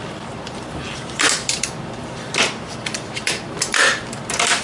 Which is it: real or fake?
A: fake